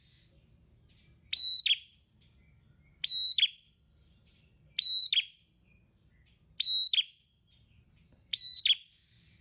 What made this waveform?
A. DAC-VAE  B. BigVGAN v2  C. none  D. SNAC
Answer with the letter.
C